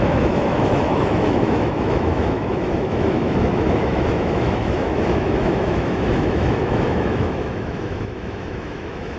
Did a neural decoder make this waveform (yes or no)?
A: yes